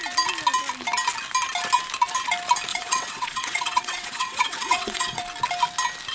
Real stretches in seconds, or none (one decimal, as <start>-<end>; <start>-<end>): 0.0-2.7; 5.2-6.1